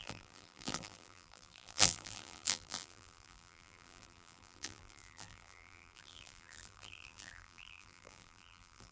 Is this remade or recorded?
remade